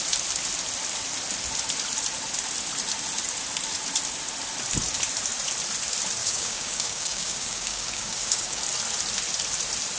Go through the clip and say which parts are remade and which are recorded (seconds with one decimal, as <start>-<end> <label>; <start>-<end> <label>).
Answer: 0.0-6.2 recorded; 6.2-8.6 remade; 8.6-10.0 recorded

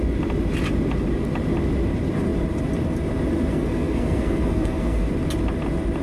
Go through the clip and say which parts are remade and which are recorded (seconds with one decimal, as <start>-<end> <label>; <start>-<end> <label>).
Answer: 0.0-3.5 recorded; 3.5-5.1 remade; 5.1-6.0 recorded

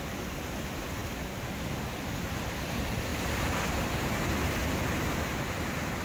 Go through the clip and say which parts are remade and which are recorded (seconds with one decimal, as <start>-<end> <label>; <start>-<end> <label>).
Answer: 0.0-6.0 recorded

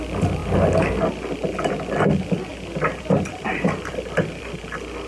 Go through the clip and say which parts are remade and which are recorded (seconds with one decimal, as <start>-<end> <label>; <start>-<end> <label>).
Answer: 0.0-2.5 recorded; 2.5-4.6 remade; 4.6-5.1 recorded

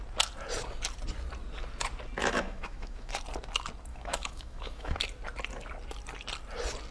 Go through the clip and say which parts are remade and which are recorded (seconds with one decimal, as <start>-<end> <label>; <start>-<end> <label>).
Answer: 0.0-2.2 recorded; 2.2-3.1 remade; 3.1-3.9 recorded; 3.9-5.0 remade; 5.0-6.9 recorded

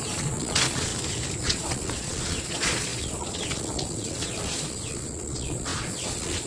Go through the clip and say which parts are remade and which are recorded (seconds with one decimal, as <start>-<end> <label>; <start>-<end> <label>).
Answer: 0.0-0.9 remade; 0.9-1.4 recorded; 1.4-6.5 remade